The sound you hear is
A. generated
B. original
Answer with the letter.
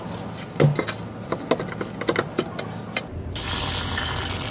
B